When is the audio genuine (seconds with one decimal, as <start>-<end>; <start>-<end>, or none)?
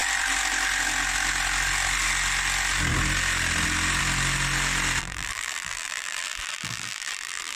0.0-5.0